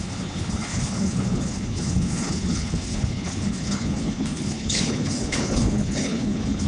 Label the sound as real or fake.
fake